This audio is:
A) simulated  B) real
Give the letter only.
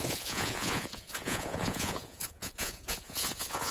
A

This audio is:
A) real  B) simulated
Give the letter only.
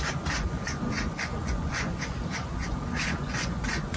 B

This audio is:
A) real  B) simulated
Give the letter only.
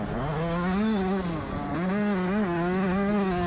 A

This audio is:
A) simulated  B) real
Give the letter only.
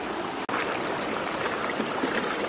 B